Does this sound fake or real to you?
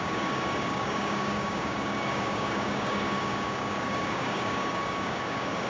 fake